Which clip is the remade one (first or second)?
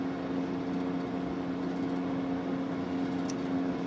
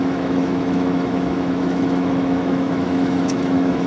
second